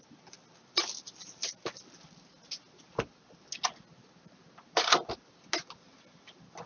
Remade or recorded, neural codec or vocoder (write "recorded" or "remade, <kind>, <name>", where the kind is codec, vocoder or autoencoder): recorded